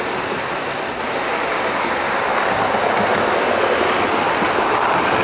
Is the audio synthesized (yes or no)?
no